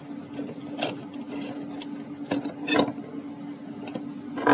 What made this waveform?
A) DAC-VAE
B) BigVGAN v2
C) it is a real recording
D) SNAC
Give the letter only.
C